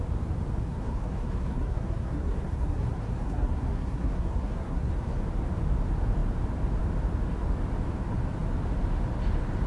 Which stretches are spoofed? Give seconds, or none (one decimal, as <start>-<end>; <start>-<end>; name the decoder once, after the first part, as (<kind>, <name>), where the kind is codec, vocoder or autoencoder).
0.7-5.2 (codec, SNAC)